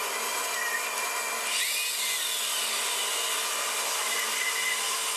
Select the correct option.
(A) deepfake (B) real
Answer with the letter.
B